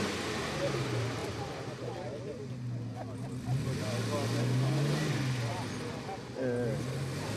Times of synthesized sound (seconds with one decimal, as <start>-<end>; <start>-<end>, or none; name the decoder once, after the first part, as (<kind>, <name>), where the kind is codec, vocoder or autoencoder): 1.2-2.4 (vocoder, BigVGAN v2)